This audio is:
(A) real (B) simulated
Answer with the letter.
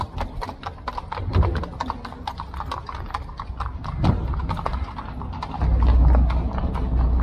A